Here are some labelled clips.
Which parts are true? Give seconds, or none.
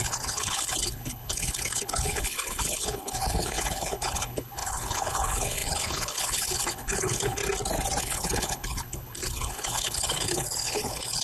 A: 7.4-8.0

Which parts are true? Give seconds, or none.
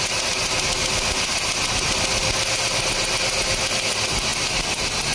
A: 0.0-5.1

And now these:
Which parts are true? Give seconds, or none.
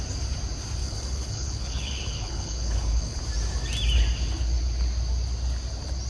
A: 0.0-0.8; 3.2-6.1